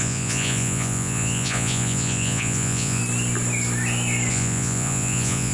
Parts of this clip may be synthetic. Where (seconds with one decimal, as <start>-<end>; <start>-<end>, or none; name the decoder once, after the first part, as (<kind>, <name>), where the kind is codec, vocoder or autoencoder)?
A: 0.0-3.0 (vocoder, Vocos); 4.3-5.5